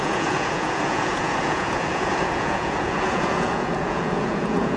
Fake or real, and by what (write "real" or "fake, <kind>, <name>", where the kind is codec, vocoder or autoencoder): fake, vocoder, Vocos